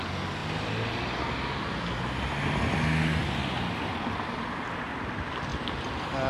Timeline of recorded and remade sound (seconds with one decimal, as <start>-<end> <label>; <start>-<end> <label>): 0.0-6.3 recorded